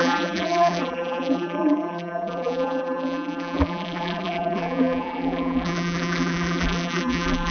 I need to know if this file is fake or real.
fake